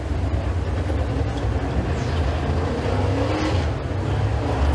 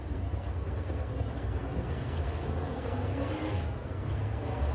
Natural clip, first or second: first